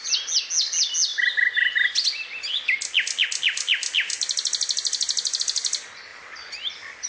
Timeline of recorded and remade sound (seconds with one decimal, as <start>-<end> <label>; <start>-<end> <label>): 0.0-7.1 recorded